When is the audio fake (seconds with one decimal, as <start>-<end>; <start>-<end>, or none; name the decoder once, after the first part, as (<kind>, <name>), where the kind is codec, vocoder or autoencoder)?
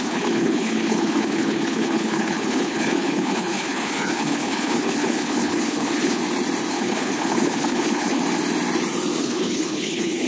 0.0-6.2 (codec, HILCodec); 6.7-8.2; 9.2-10.3